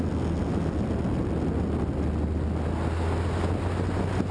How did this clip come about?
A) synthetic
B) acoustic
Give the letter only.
B